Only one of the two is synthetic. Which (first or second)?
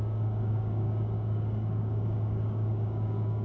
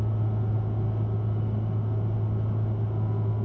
first